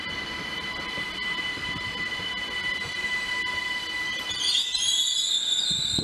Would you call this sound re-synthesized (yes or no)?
no